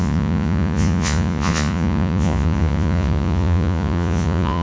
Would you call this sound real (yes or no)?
no